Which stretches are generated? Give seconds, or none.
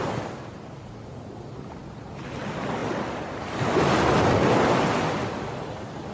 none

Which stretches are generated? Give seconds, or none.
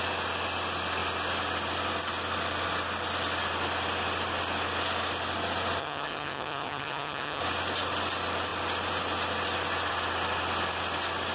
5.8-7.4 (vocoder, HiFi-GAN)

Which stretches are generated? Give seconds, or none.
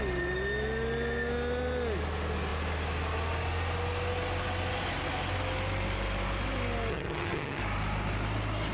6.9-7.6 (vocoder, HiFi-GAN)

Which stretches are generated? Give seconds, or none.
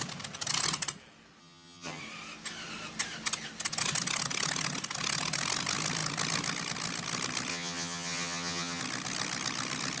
1.4-2.0 (vocoder, HiFi-GAN); 7.5-8.8